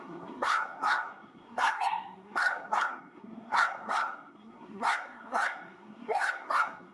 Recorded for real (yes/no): no